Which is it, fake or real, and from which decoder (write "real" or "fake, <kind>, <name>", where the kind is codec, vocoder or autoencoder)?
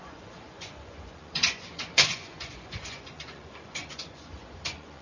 fake, vocoder, Vocos